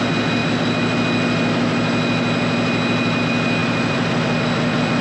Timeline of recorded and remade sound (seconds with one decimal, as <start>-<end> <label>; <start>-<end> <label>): 0.0-3.6 recorded; 3.6-4.2 remade; 4.2-5.0 recorded